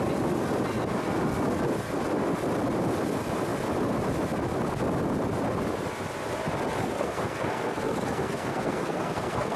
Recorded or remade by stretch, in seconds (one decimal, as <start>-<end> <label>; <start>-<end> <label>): 0.0-6.8 recorded; 6.8-9.6 remade

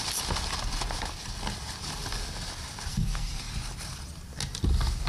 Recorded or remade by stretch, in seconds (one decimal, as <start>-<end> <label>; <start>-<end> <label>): 0.0-2.9 recorded; 2.9-3.5 remade; 3.5-5.1 recorded

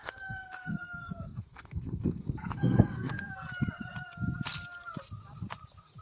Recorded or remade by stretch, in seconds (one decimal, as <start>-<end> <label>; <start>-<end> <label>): 0.0-3.3 remade; 3.3-6.0 recorded

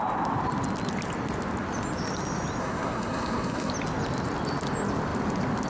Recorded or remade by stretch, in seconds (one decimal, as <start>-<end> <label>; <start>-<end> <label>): 0.0-2.6 recorded; 2.6-3.7 remade; 3.7-5.7 recorded

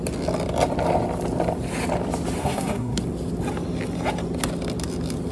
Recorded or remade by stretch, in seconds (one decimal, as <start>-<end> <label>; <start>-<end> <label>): 0.0-2.4 recorded; 2.4-3.0 remade; 3.0-5.3 recorded

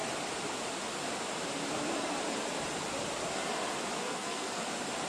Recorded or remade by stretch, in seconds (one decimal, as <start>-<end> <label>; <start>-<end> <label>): 0.0-4.0 recorded; 4.0-4.6 remade; 4.6-5.1 recorded

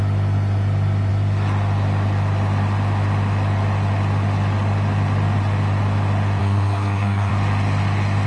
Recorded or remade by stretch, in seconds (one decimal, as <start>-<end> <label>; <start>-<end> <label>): 0.0-6.4 recorded; 6.4-7.3 remade; 7.3-8.3 recorded